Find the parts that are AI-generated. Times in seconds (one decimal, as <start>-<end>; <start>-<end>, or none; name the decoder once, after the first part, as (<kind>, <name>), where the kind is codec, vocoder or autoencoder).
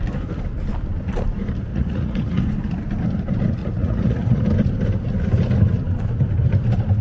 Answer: 1.7-2.4 (vocoder, Vocos); 3.6-4.4